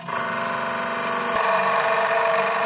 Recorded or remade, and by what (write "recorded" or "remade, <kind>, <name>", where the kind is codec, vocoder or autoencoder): recorded